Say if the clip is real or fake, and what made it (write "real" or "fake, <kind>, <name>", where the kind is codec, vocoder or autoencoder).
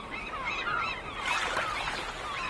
real